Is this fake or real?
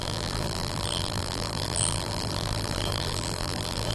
fake